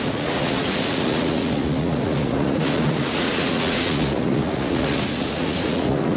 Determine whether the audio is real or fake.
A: fake